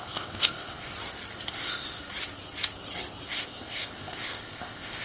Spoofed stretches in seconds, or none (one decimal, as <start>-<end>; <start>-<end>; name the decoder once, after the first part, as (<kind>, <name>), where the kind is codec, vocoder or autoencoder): 0.0-0.9 (codec, ZipCodec); 1.5-2.0; 3.3-5.0